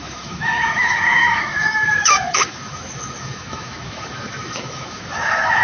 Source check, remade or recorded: remade